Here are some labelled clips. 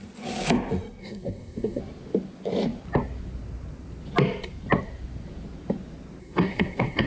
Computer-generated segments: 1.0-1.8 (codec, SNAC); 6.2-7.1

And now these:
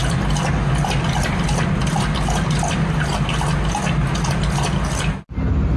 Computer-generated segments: none

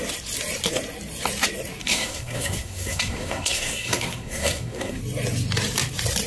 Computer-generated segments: 1.8-5.0 (codec, SNAC)

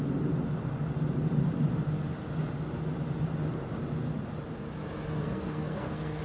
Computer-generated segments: 5.2-6.2 (codec, SNAC)

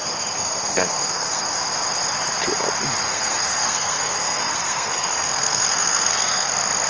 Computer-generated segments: 0.0-1.5 (codec, SNAC); 3.1-6.5

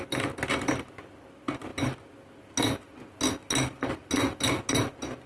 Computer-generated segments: none